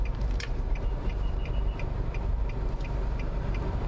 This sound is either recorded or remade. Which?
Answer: remade